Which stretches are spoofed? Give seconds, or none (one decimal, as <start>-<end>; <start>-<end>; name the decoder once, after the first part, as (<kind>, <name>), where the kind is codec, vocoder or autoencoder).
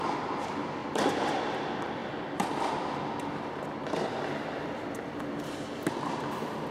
2.0-2.9 (vocoder, BigVGAN v2)